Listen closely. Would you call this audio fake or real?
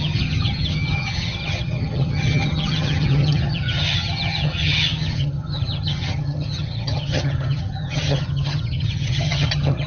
fake